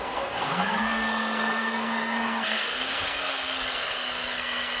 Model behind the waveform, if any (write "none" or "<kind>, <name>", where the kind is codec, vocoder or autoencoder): codec, SNAC